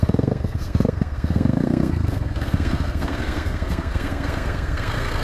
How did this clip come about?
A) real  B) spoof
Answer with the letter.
B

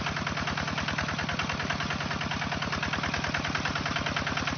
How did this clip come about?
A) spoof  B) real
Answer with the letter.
B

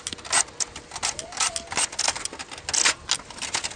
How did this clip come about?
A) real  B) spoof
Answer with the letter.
A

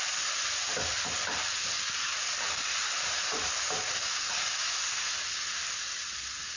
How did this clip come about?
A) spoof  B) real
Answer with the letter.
B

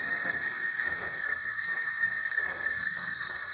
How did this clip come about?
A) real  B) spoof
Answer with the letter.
B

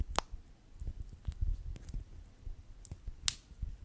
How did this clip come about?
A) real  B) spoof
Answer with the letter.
A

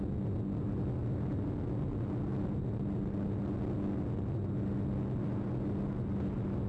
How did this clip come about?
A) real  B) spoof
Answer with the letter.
A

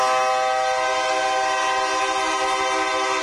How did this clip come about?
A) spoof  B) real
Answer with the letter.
B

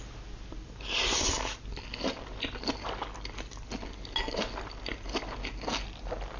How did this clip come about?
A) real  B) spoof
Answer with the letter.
A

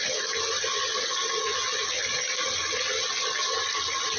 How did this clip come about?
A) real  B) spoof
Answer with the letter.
A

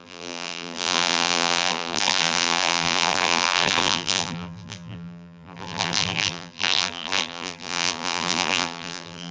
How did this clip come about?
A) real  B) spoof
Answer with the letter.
B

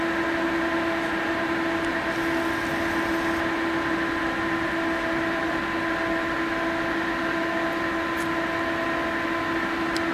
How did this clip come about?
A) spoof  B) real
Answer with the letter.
B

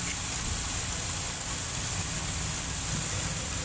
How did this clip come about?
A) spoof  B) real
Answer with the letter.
B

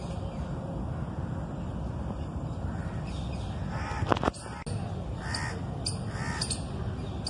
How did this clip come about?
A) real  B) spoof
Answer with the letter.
A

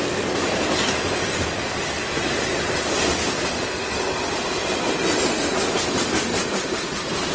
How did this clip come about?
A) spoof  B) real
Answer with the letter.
B